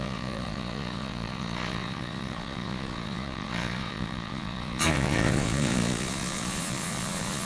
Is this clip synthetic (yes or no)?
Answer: yes